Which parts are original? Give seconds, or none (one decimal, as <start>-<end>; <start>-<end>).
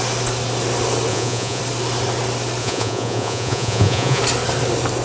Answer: 0.0-1.1; 1.6-2.6; 4.2-5.0